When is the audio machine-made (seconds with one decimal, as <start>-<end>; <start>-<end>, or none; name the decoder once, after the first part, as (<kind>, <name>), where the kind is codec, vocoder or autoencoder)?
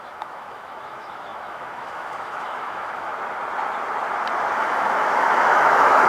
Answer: 0.0-3.1 (autoencoder, DAC-VAE); 4.5-6.1